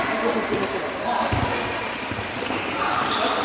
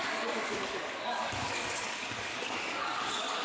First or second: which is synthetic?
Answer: second